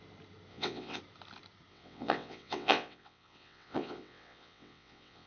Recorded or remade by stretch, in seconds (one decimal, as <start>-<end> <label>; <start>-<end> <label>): 0.0-0.5 recorded; 0.5-1.0 remade; 1.0-1.7 recorded; 1.7-5.3 remade